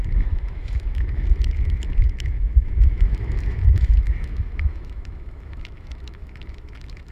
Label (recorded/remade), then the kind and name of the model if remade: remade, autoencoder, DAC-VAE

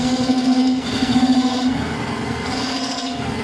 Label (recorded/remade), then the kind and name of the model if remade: remade, codec, SNAC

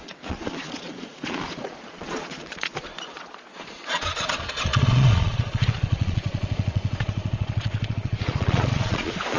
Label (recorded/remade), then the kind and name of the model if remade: remade, vocoder, Vocos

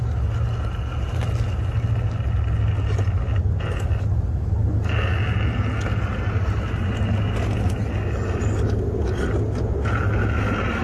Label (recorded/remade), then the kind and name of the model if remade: recorded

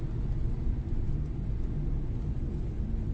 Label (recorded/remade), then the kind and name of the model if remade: recorded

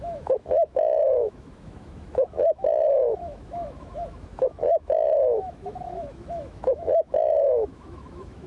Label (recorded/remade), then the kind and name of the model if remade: remade, autoencoder, DAC-VAE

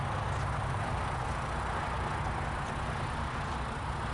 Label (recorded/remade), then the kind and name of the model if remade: recorded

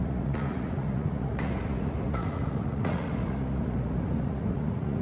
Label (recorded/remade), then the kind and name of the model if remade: remade, vocoder, Vocos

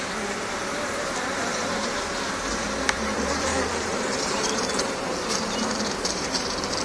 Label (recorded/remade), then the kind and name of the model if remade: remade, vocoder, BigVGAN v2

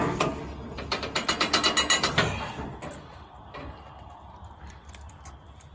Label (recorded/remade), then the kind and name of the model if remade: recorded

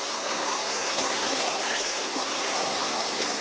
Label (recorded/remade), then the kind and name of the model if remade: remade, codec, SNAC